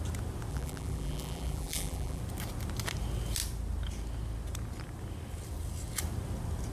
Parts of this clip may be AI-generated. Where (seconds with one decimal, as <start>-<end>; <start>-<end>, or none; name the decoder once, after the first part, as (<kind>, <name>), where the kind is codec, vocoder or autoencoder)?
0.5-2.2 (vocoder, BigVGAN v2)